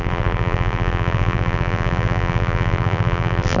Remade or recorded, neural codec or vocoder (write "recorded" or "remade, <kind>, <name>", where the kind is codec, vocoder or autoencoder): remade, vocoder, BigVGAN v2